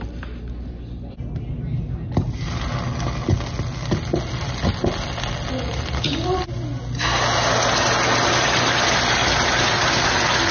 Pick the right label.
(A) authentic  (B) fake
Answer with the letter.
A